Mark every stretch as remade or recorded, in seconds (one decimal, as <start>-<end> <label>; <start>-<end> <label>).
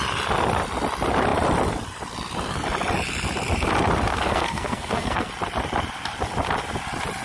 0.0-4.1 recorded; 4.1-5.3 remade; 5.3-7.2 recorded